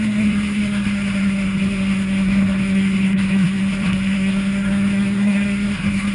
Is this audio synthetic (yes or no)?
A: yes